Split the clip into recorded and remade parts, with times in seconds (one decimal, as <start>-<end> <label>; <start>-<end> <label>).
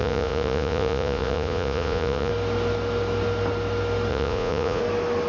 0.0-2.3 remade; 2.3-4.1 recorded; 4.1-4.8 remade; 4.8-5.3 recorded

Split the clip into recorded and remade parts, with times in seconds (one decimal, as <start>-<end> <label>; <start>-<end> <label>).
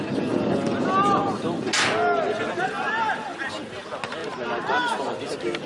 0.0-5.7 recorded